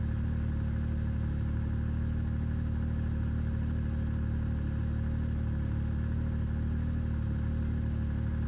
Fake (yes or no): no